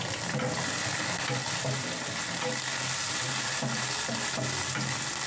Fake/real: real